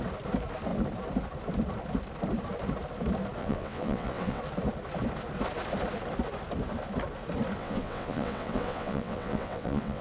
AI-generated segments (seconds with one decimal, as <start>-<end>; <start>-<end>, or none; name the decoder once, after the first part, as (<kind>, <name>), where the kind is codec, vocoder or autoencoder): 3.4-4.4 (vocoder, WaveNeXt); 7.6-10.0